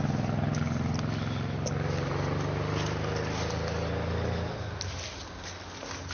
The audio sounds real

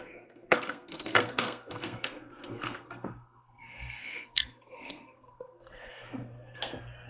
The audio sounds fake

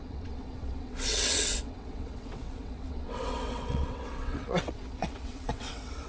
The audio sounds fake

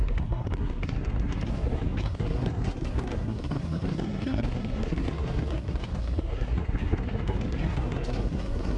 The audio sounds fake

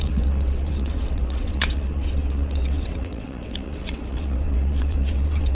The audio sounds fake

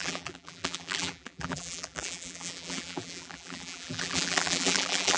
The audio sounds fake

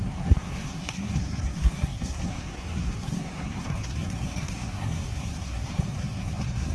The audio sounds fake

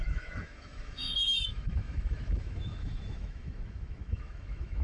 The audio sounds fake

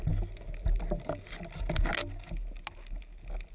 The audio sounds real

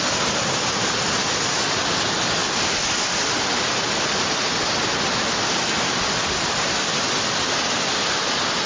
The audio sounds real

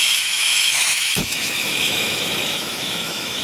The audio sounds fake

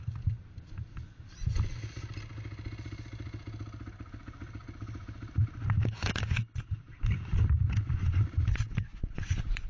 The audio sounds real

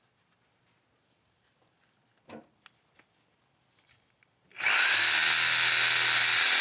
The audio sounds real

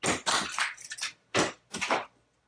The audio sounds real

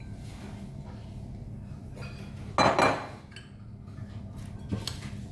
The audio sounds real